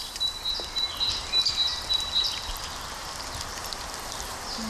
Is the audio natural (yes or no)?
no